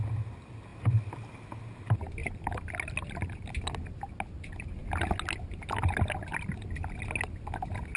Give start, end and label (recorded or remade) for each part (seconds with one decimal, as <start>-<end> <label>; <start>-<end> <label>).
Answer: 0.0-8.0 recorded